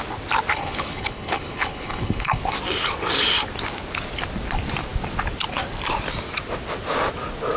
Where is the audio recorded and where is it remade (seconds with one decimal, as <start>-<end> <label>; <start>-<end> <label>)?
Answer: 0.0-0.5 recorded; 0.5-2.4 remade; 2.4-7.6 recorded